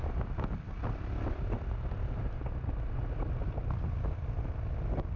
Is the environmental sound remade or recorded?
recorded